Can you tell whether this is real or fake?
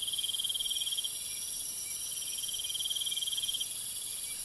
real